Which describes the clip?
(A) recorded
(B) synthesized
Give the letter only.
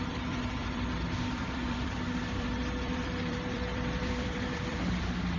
B